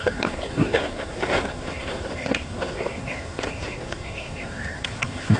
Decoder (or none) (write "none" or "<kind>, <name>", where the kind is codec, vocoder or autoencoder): codec, SNAC